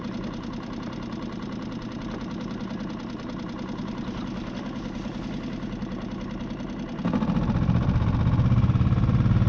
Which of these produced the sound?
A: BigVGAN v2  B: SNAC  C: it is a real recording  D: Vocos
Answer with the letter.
C